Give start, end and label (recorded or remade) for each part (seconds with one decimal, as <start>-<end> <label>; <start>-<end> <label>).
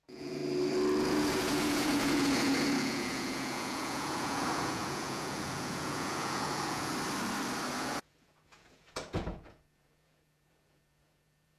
0.0-0.4 remade; 0.4-1.0 recorded; 1.0-6.9 remade; 6.9-7.7 recorded; 7.7-11.6 remade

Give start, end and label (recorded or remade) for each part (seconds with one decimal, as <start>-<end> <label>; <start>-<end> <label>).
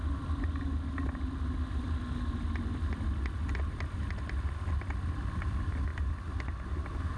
0.0-7.2 recorded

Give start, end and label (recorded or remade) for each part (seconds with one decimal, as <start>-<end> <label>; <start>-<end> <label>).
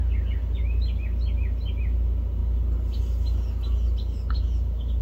0.0-5.0 recorded